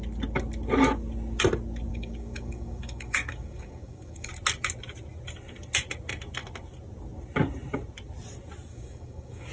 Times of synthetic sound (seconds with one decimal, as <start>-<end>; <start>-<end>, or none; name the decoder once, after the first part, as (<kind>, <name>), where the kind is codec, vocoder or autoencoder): 1.9-4.3 (codec, DAC); 8.7-9.5